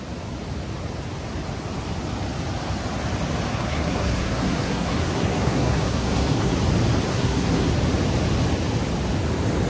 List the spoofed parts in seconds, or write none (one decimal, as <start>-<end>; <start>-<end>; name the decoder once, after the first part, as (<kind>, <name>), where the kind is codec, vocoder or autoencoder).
3.5-6.5 (codec, SNAC); 7.1-7.7